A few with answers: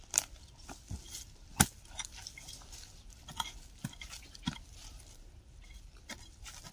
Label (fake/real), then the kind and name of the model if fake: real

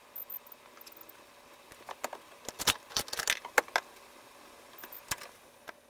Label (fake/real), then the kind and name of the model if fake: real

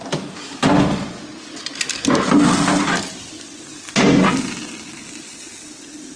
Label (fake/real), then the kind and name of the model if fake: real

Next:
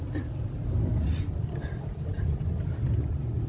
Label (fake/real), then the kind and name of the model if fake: real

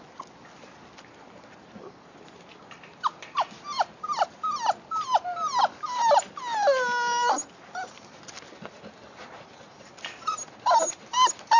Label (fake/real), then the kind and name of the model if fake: real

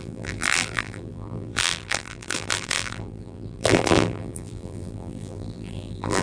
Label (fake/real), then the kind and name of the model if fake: fake, vocoder, BigVGAN v2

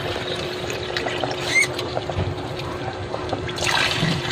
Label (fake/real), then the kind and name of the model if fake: fake, vocoder, BigVGAN v2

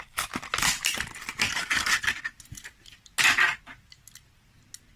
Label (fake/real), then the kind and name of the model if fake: real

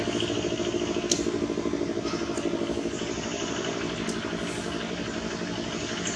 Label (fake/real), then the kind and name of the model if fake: real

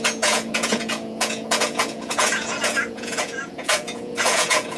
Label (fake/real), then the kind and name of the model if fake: fake, vocoder, Vocos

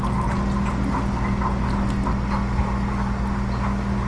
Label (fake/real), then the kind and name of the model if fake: real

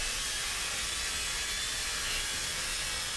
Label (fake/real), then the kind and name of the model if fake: real